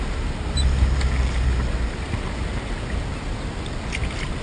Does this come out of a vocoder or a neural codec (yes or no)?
no